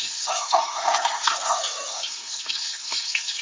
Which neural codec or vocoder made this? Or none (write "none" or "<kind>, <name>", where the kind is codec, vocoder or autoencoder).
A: codec, SNAC